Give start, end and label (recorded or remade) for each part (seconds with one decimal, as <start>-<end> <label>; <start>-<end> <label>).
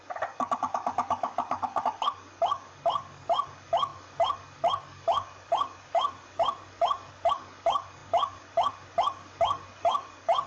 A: 0.0-10.5 remade